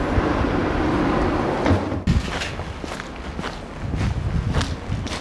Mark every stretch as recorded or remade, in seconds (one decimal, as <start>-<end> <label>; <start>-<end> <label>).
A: 0.0-5.2 recorded